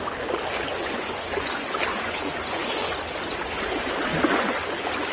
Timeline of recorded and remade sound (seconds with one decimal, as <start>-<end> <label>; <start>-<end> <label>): 0.0-0.7 recorded; 0.7-3.0 remade; 3.0-4.1 recorded; 4.1-4.6 remade; 4.6-5.1 recorded